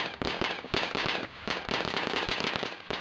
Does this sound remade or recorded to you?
remade